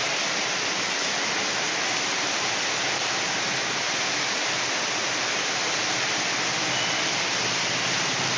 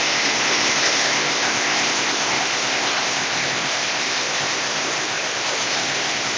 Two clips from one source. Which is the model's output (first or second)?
second